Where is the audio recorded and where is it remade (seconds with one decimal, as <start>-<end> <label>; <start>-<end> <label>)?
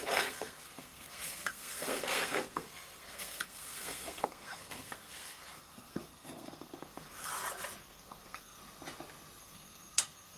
0.0-7.3 remade; 7.3-7.8 recorded; 7.8-8.6 remade; 8.6-9.4 recorded; 9.4-10.4 remade